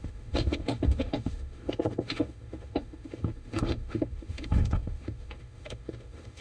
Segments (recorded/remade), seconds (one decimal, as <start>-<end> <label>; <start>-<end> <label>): 0.0-6.4 remade